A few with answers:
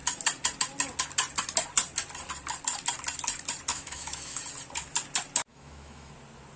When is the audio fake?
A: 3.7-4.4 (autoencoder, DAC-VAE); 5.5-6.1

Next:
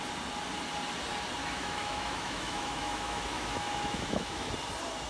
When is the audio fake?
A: 1.4-4.5 (autoencoder, DAC-VAE)

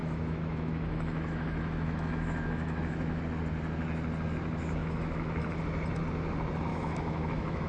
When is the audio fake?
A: 0.0-3.2 (autoencoder, DAC-VAE); 4.8-5.6; 6.7-7.7

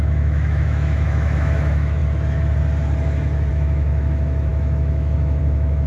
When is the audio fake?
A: 0.0-2.0 (autoencoder, DAC-VAE); 3.5-5.9